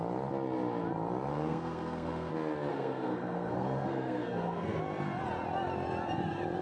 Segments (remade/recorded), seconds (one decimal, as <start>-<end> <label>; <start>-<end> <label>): 0.0-1.3 recorded; 1.3-2.3 remade; 2.3-2.7 recorded; 2.7-4.8 remade; 4.8-6.6 recorded